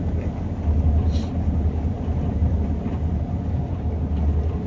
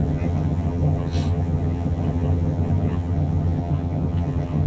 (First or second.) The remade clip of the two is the second